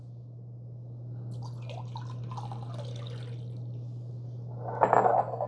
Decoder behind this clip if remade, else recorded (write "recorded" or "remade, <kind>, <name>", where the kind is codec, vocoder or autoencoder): recorded